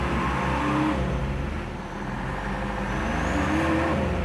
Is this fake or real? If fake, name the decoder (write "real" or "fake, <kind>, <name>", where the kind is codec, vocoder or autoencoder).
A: real